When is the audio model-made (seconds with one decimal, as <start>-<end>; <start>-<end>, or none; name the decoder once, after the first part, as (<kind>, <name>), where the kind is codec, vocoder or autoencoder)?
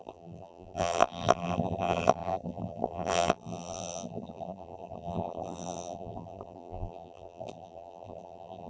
0.0-8.7 (vocoder, BigVGAN v2)